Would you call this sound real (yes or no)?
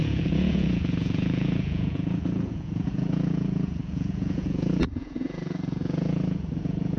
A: no